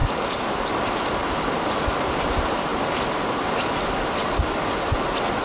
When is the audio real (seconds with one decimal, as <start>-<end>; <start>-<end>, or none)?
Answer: 0.0-5.4